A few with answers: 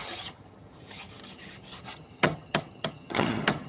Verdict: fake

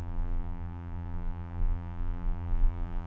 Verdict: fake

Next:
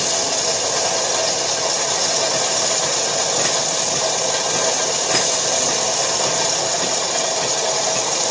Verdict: real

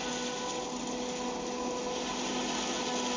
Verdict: real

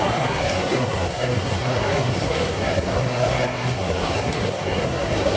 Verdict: fake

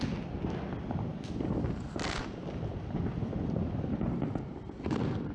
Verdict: real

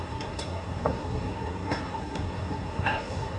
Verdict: fake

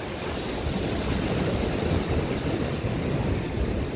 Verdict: real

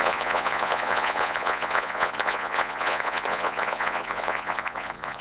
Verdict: fake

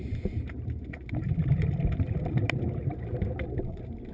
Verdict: fake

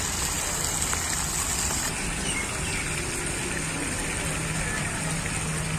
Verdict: real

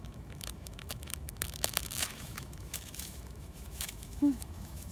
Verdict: fake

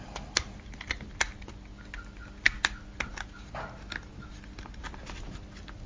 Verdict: real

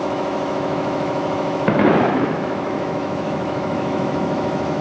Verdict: fake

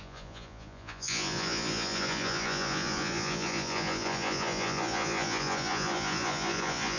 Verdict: fake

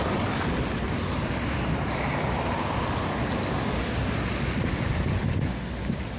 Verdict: real